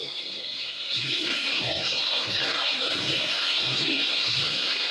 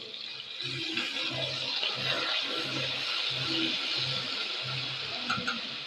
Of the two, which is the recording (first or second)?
second